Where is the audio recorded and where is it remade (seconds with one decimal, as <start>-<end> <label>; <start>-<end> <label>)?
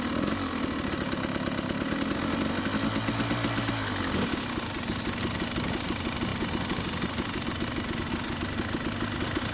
0.0-9.5 recorded